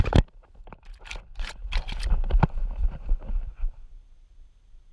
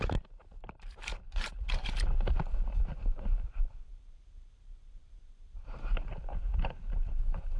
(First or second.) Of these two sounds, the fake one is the second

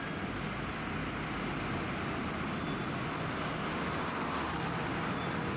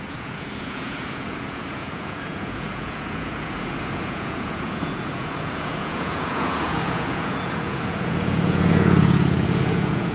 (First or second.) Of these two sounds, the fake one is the second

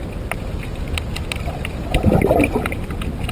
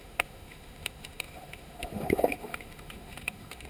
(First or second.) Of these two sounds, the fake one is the second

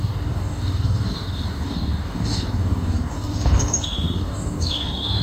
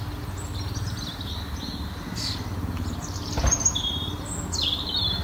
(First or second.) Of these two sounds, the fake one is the first